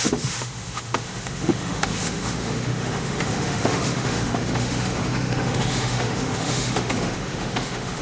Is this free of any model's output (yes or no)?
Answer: no